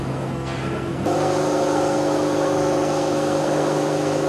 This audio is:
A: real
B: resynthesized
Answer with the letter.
B